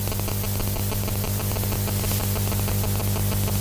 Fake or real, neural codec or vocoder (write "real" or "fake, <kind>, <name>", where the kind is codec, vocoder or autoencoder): real